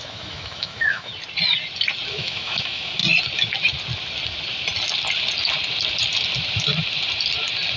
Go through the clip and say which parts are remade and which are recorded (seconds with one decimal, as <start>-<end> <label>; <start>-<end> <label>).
0.0-1.1 remade; 1.1-2.1 recorded; 2.1-3.0 remade; 3.0-7.8 recorded